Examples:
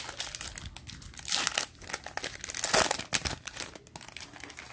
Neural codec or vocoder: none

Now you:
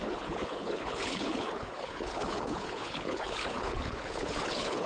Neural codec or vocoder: codec, HILCodec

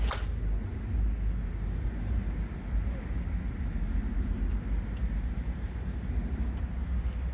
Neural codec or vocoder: none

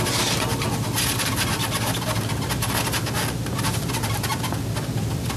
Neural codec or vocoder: none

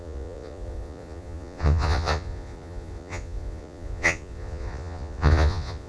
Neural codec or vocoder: vocoder, Vocos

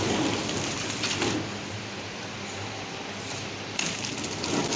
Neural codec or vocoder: none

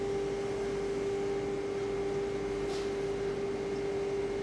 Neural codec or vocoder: none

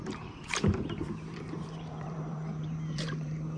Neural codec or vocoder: vocoder, BigVGAN v2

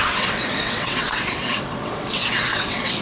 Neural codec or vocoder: vocoder, WaveNeXt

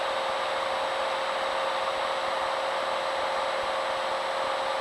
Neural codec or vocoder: none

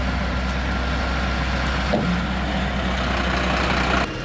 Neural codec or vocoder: none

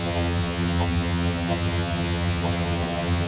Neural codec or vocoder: vocoder, HiFi-GAN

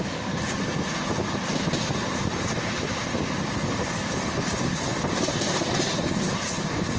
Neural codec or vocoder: none